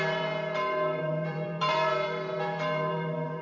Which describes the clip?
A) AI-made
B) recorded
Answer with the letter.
A